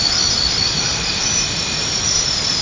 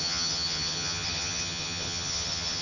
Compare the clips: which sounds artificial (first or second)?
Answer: second